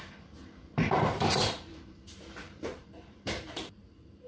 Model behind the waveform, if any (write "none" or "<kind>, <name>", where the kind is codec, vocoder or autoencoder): vocoder, BigVGAN v2